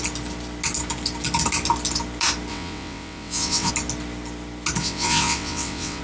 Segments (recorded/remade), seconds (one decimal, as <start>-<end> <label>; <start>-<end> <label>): 0.0-2.5 recorded; 2.5-3.7 remade; 3.7-4.8 recorded; 4.8-6.0 remade